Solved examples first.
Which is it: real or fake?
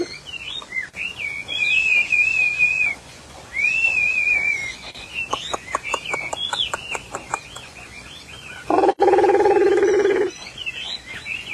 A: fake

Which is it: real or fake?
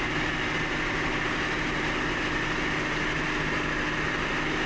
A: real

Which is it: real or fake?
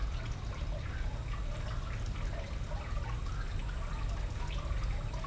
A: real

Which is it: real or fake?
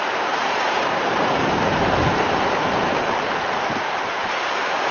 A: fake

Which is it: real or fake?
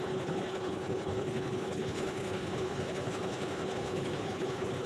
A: fake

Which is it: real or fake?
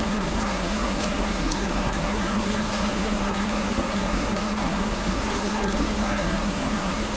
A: fake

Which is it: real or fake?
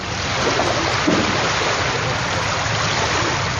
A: real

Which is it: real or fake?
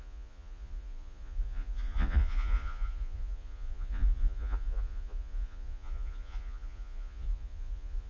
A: fake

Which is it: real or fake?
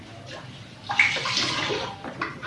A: real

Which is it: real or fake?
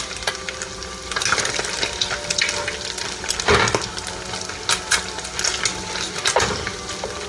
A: real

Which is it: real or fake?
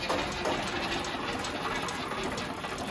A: real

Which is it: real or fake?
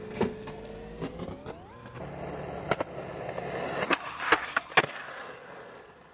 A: real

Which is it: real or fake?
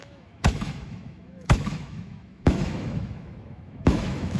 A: fake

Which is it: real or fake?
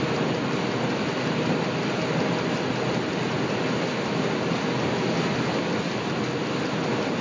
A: real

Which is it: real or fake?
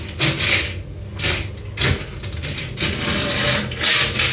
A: real